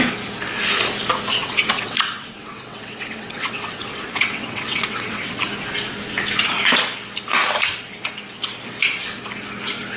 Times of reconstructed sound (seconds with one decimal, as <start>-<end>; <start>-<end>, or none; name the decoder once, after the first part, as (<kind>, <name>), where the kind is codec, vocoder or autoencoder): 1.3-5.4 (vocoder, WaveNeXt)